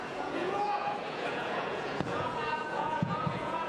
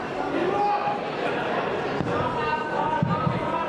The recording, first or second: second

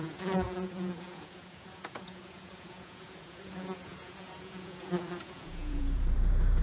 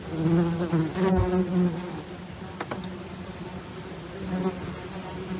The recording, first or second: second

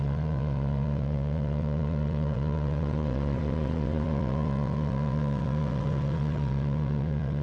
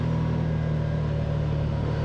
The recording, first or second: second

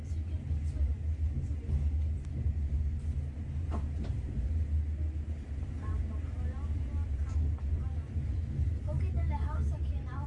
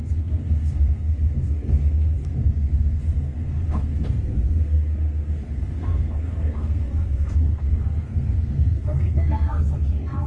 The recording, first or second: first